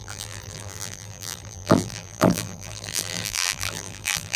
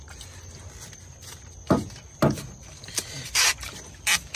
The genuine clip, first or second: second